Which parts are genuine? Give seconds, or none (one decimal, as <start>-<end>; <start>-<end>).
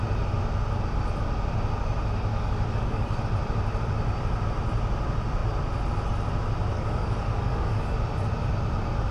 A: 0.0-2.3; 3.2-6.7; 7.9-9.1